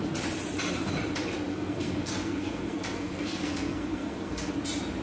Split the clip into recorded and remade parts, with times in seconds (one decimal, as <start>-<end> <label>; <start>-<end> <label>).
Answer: 0.0-1.5 recorded; 1.5-4.5 remade; 4.5-5.0 recorded